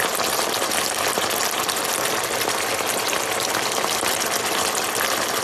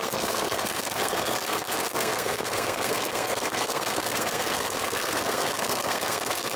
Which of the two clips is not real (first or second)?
second